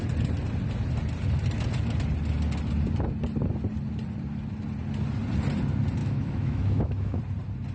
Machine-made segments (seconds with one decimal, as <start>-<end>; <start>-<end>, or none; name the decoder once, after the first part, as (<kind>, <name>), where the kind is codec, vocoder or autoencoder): 6.0-7.2 (autoencoder, DAC-VAE)